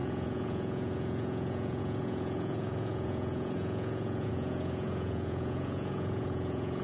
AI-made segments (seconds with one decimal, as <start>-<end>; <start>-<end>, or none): 0.0-6.8